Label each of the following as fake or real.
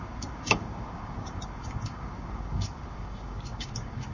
fake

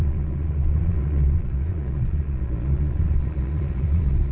fake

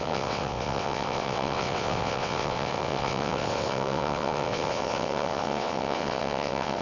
fake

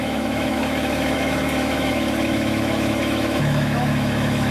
fake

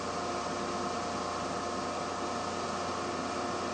real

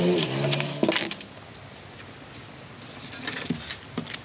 real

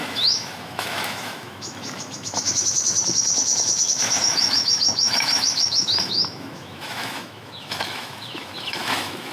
fake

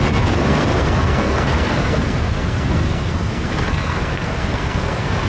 fake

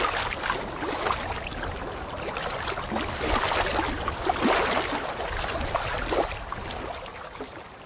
real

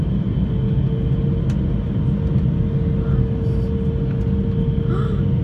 real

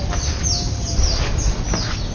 real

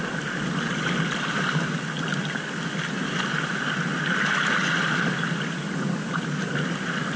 real